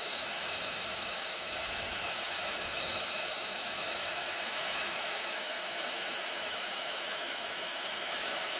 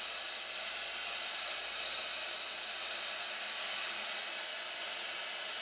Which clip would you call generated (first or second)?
first